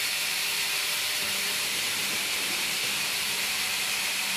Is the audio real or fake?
fake